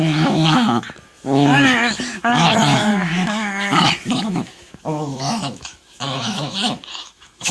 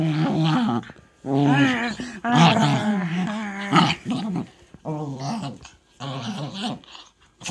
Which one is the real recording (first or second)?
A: second